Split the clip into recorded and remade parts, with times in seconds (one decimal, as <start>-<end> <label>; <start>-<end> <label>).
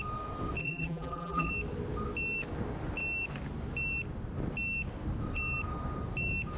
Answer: 0.0-0.6 recorded; 0.6-1.5 remade; 1.5-6.6 recorded